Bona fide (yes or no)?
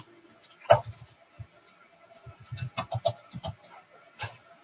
yes